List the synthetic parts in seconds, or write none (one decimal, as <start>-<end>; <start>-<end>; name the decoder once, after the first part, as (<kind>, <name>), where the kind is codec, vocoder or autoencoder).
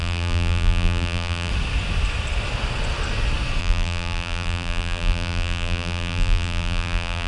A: 0.0-1.5 (vocoder, BigVGAN v2); 3.6-7.3